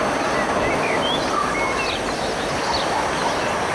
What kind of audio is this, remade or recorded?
recorded